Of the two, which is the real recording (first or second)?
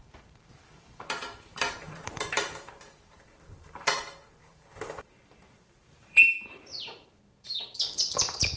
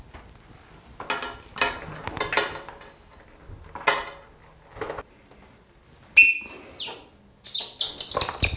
second